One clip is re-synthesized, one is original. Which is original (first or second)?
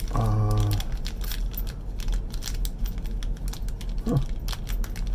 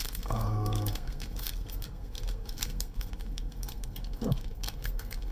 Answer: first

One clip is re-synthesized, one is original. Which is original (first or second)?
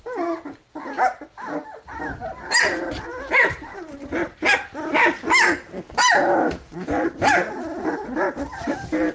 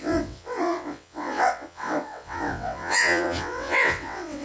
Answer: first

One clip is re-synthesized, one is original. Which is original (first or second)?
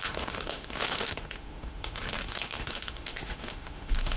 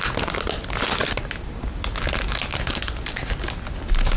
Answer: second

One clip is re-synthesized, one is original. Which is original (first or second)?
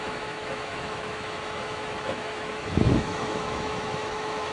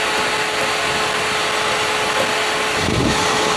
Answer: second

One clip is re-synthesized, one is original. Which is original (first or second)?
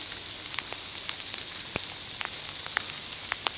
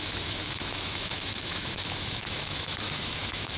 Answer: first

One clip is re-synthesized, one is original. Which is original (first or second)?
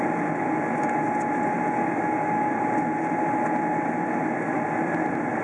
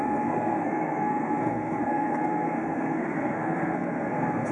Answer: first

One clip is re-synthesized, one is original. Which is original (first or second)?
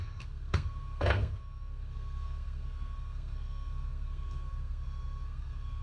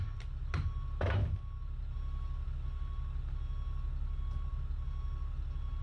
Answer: second